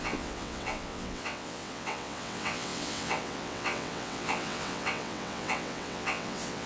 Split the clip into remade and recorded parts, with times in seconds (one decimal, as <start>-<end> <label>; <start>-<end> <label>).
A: 0.0-6.7 remade